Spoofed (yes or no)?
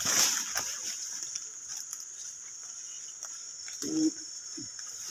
yes